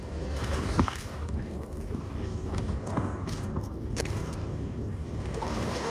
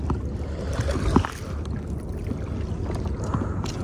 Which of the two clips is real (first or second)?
second